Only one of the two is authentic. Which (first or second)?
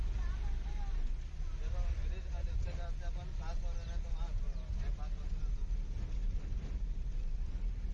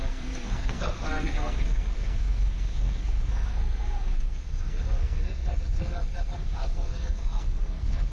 first